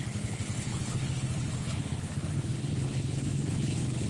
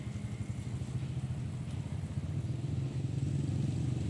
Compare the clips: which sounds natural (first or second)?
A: second